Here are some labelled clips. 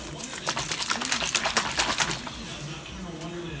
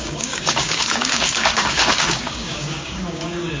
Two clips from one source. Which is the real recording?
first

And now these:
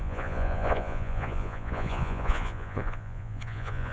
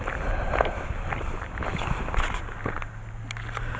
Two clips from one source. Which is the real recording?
second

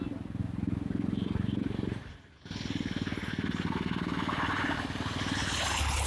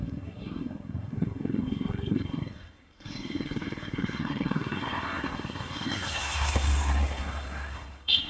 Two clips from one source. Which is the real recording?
first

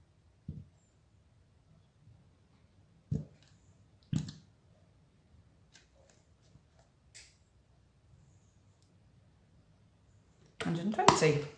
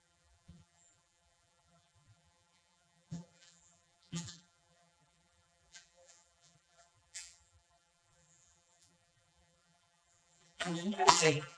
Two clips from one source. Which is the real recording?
first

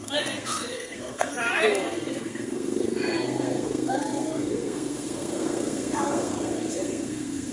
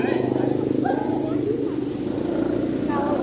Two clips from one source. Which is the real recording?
second